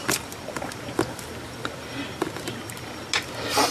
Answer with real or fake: real